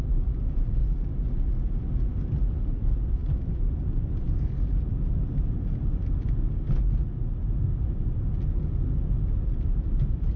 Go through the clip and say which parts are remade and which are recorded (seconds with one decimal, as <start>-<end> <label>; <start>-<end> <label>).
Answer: 0.0-0.8 remade; 0.8-2.4 recorded; 2.4-10.4 remade